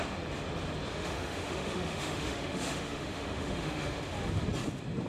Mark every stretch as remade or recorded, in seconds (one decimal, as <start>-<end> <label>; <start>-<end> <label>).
0.0-0.9 recorded; 0.9-4.0 remade; 4.0-5.1 recorded